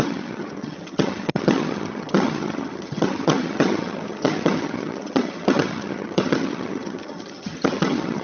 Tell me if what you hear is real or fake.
fake